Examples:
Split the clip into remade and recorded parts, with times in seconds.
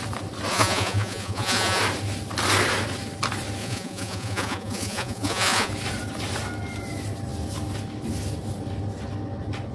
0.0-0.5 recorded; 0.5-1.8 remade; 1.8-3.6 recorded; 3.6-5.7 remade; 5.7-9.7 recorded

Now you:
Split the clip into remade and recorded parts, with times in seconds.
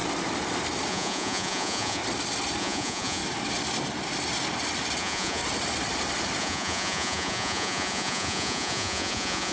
0.0-0.9 recorded; 0.9-2.0 remade; 2.0-2.6 recorded; 2.6-3.2 remade; 3.2-5.0 recorded; 5.0-5.4 remade; 5.4-6.4 recorded; 6.4-9.5 remade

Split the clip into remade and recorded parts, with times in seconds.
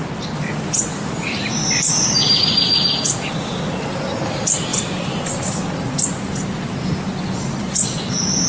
0.0-0.9 recorded; 0.9-2.4 remade; 2.4-4.7 recorded; 4.7-5.4 remade; 5.4-8.5 recorded